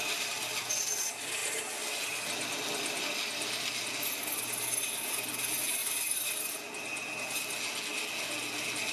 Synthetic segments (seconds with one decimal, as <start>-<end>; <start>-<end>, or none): 5.8-6.4